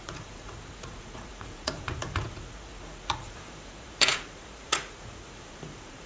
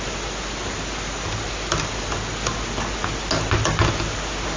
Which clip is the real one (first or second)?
second